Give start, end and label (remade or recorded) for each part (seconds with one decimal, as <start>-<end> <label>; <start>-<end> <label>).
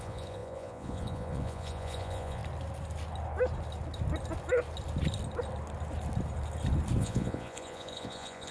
0.0-2.4 remade; 2.4-7.0 recorded; 7.0-8.5 remade